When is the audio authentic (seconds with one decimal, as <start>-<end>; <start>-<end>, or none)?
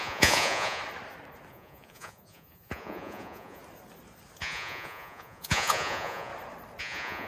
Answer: 0.8-1.5; 3.6-4.4; 6.3-6.8